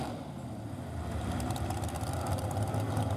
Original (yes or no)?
yes